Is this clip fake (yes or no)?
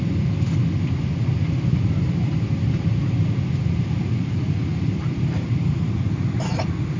no